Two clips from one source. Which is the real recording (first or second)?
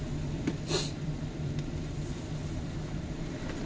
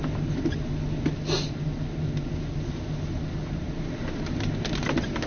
second